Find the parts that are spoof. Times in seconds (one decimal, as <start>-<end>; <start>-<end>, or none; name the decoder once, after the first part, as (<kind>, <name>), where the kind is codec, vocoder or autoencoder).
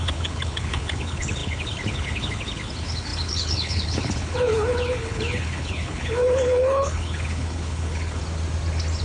0.0-8.2 (codec, HILCodec)